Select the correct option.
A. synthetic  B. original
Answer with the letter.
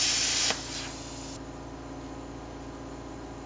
B